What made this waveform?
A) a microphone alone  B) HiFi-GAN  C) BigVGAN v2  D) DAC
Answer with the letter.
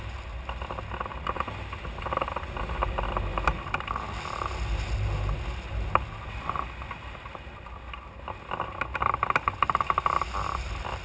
A